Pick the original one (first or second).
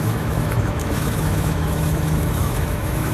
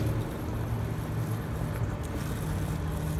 second